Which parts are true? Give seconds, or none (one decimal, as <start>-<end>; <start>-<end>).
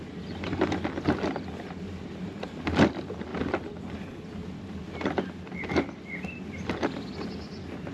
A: 0.0-7.9